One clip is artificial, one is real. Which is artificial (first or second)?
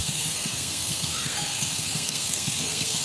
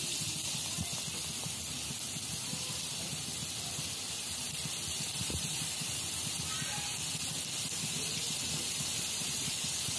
first